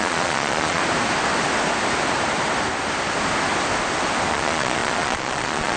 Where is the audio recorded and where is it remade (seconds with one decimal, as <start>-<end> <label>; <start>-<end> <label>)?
0.0-0.8 remade; 0.8-4.3 recorded; 4.3-5.8 remade